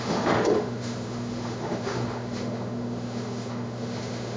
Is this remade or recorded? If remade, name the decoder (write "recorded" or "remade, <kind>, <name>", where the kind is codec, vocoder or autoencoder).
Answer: remade, autoencoder, DAC-VAE